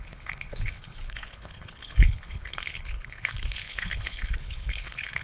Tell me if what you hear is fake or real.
fake